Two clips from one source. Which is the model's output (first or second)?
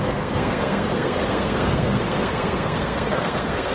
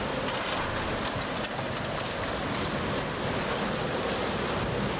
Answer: first